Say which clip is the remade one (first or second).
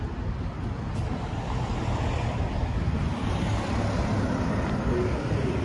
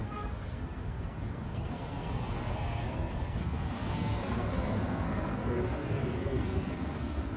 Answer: second